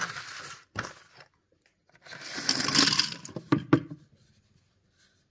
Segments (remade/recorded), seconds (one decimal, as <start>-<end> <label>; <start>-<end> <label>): 0.0-5.3 recorded